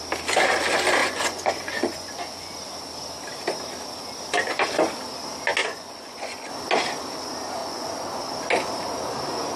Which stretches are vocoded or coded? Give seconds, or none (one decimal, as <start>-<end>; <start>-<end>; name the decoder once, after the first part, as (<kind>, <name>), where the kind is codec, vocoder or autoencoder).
1.0-2.6 (vocoder, Vocos); 5.6-6.5; 7.6-8.4